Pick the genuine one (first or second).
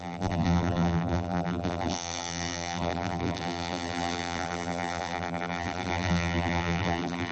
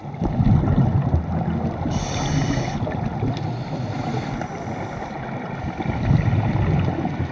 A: second